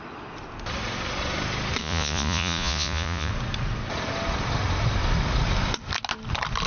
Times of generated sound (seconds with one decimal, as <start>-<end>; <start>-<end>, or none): 1.8-3.3